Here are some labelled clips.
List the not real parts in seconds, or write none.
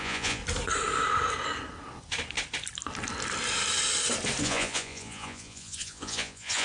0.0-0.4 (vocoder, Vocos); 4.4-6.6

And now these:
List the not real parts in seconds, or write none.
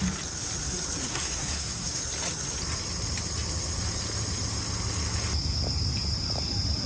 1.1-2.0 (codec, SNAC)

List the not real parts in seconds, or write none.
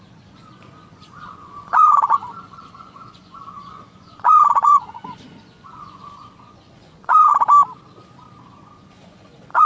0.0-7.3 (vocoder, Vocos); 8.5-9.7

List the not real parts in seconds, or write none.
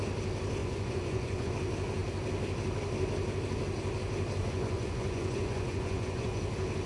0.6-1.5 (vocoder, Vocos); 4.4-6.4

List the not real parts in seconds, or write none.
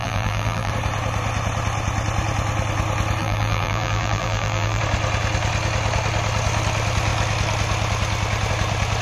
0.0-0.7 (vocoder, BigVGAN v2); 3.2-4.8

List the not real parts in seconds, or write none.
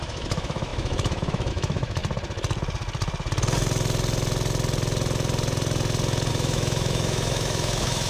0.0-2.0 (autoencoder, DAC-VAE); 6.3-8.1